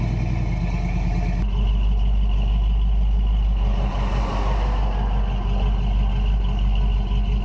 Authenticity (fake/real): real